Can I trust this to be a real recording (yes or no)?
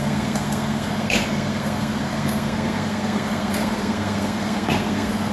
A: no